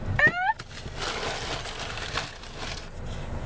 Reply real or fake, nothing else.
real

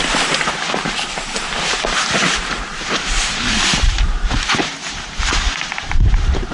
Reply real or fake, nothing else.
fake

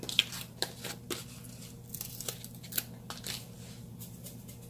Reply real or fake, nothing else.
real